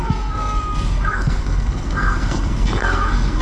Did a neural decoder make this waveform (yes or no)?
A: yes